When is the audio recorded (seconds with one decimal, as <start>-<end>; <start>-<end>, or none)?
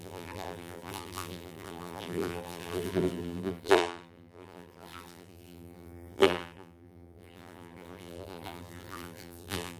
none